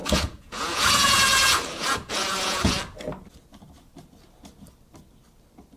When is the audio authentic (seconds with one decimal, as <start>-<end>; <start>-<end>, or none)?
2.6-5.8